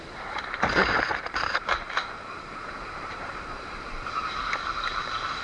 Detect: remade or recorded remade